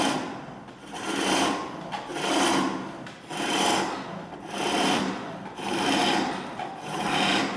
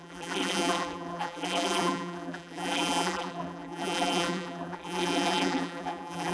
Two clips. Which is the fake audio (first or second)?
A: second